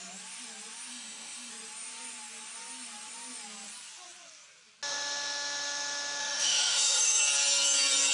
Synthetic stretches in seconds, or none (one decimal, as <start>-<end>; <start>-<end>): 0.9-1.5; 6.2-7.2